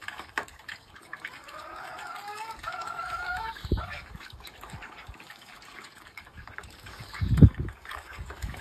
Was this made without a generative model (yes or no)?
no